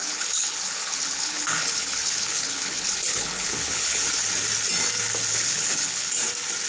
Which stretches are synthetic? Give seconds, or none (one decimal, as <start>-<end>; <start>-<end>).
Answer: 0.0-4.0; 5.3-6.1